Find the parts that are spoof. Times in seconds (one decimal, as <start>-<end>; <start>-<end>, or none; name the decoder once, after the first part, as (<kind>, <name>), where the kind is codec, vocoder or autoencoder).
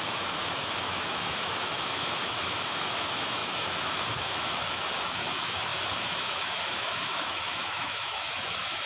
0.0-8.9 (autoencoder, DAC-VAE)